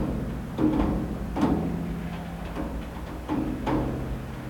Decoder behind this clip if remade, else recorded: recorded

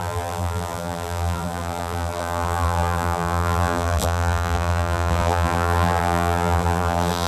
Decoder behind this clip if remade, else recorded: remade, vocoder, BigVGAN v2